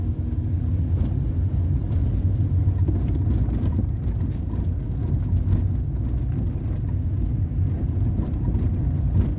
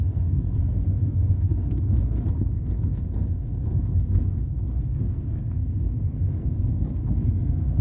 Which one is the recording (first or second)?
first